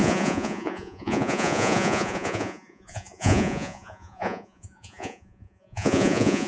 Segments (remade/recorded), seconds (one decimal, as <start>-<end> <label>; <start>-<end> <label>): 0.0-6.5 remade

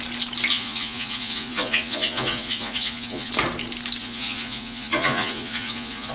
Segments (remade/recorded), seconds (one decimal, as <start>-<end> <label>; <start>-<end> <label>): 0.0-0.5 recorded; 0.5-3.3 remade; 3.3-4.0 recorded; 4.0-6.1 remade

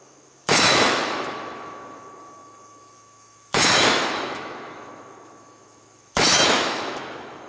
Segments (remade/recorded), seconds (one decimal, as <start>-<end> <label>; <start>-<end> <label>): 0.0-7.5 remade

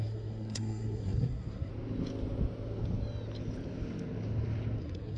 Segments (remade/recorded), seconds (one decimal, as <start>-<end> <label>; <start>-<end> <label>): 0.0-1.7 remade; 1.7-4.8 recorded; 4.8-5.2 remade

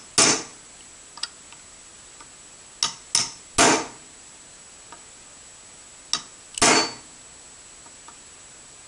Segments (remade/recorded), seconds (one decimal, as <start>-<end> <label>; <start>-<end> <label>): 0.0-8.9 recorded

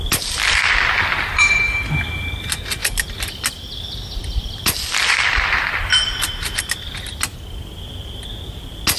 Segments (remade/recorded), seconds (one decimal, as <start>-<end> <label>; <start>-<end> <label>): 0.0-2.8 recorded; 2.8-6.6 remade; 6.6-9.0 recorded

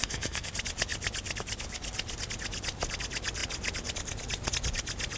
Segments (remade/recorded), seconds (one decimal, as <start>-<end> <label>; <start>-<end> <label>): 0.0-0.5 remade; 0.5-5.2 recorded

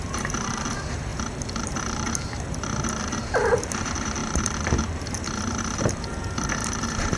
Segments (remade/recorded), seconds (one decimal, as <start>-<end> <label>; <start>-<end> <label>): 0.0-7.2 remade